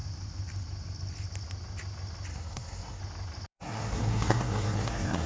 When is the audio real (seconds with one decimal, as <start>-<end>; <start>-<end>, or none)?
0.0-2.3; 3.0-3.5